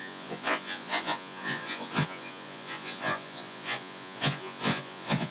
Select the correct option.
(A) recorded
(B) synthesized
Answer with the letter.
B